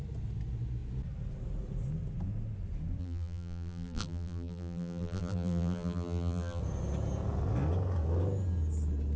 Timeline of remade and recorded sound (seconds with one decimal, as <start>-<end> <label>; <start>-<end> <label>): 0.0-3.0 recorded; 3.0-6.6 remade; 6.6-9.2 recorded